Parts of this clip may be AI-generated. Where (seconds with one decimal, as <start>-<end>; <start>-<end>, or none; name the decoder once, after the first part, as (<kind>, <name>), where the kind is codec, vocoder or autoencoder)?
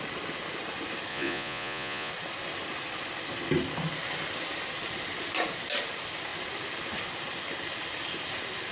1.1-2.1 (vocoder, Vocos)